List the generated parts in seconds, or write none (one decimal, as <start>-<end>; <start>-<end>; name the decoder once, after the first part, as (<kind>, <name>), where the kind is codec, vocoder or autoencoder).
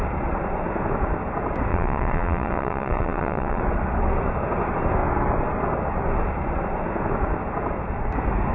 1.7-3.6 (vocoder, WaveNeXt)